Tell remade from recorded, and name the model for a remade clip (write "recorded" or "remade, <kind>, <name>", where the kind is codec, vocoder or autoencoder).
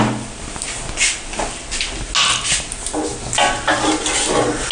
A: recorded